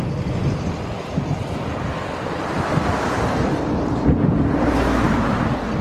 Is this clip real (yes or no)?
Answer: no